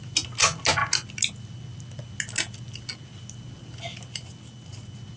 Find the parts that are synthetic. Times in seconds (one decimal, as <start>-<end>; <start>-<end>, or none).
none